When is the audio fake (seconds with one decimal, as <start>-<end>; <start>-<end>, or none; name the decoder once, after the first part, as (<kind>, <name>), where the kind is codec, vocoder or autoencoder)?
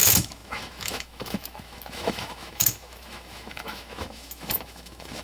0.0-5.2 (autoencoder, DAC-VAE)